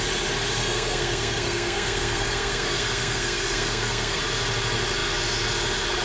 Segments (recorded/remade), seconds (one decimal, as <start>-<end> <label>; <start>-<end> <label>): 0.0-0.6 recorded; 0.6-4.2 remade; 4.2-6.0 recorded